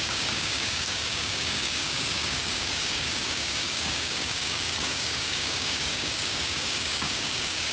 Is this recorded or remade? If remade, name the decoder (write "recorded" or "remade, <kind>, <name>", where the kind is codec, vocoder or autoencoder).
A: remade, codec, DAC